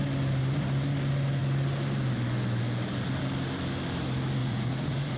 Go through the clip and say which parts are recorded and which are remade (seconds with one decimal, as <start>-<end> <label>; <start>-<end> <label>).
0.0-4.4 recorded; 4.4-5.2 remade